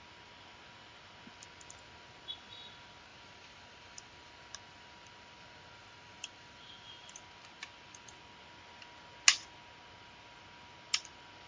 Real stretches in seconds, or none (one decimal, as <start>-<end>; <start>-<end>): 0.0-3.1; 4.3-5.8; 8.2-11.5